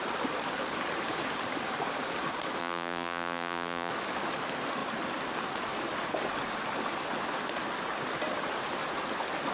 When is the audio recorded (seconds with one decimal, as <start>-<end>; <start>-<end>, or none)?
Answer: 0.0-2.6; 3.9-9.5